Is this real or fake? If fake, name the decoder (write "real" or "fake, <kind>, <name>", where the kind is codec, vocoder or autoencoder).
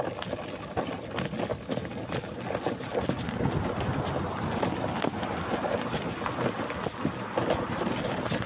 real